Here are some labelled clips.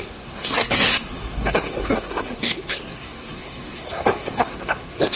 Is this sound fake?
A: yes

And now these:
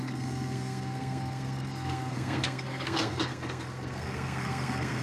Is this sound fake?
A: yes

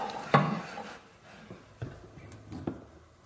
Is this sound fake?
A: no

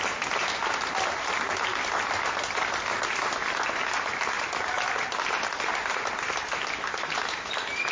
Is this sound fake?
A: no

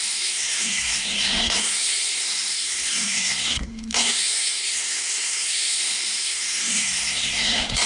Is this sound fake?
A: yes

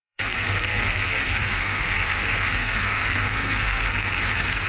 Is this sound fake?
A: yes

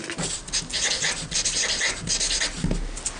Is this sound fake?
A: no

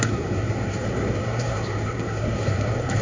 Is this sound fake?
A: yes